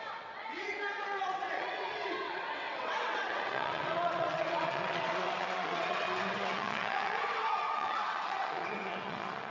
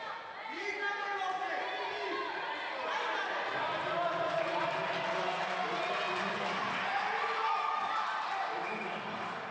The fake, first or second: first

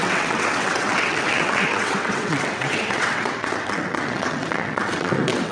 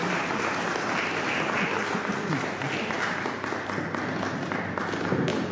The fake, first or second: first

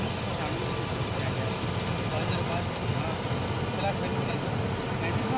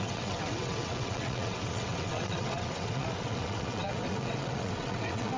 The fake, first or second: second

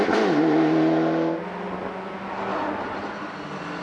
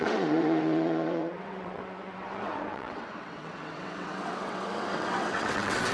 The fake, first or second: second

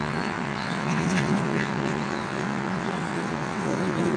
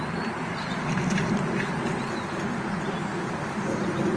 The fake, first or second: first